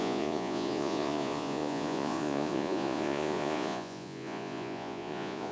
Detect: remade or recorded remade